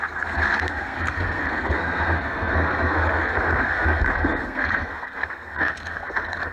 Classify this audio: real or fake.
fake